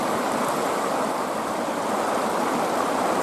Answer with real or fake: real